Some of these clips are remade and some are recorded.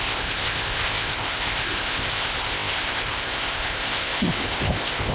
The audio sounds remade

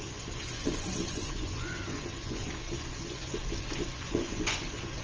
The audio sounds remade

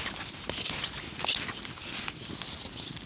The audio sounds recorded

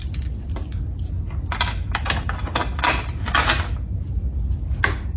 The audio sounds recorded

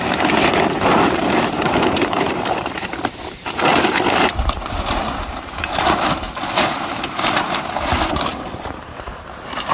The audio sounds remade